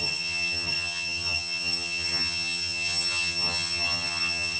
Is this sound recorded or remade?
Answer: remade